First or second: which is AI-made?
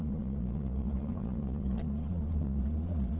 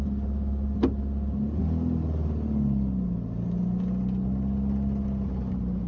first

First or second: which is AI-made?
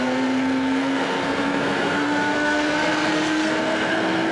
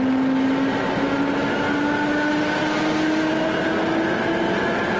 first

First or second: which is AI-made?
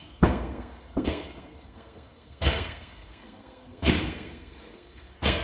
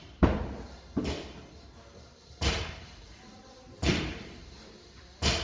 first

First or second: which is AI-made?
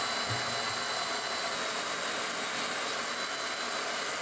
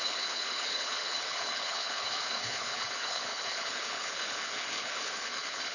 second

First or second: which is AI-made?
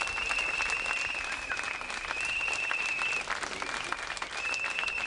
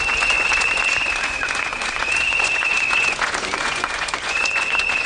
second